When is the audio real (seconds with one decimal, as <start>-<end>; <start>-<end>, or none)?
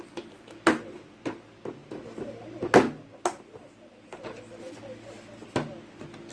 0.0-1.8; 2.6-6.3